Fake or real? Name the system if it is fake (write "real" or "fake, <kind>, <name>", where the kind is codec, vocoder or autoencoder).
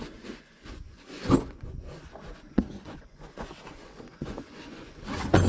fake, vocoder, Vocos